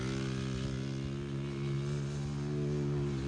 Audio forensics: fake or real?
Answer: real